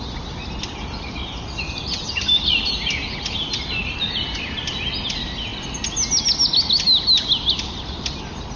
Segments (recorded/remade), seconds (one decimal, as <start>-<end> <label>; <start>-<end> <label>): 0.0-8.6 recorded